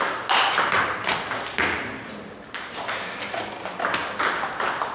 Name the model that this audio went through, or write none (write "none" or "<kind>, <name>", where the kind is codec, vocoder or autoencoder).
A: none